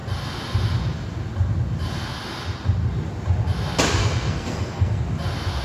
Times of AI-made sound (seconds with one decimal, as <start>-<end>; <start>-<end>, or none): 4.0-5.0